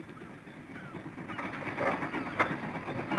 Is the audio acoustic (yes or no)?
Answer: yes